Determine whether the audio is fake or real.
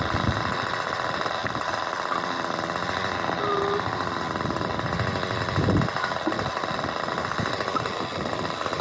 real